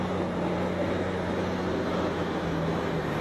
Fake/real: real